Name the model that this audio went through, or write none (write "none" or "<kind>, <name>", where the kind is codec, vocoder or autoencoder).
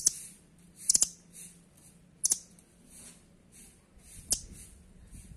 none